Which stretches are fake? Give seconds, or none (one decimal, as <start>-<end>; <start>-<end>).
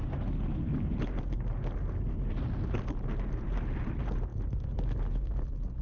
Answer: none